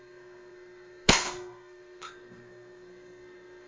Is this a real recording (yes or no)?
no